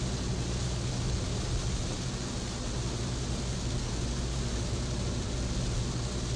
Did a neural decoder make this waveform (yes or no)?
no